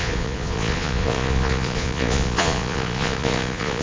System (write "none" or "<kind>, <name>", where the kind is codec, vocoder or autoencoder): vocoder, Vocos